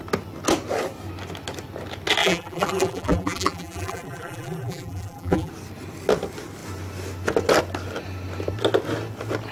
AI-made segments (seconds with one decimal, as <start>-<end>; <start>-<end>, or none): 2.2-5.5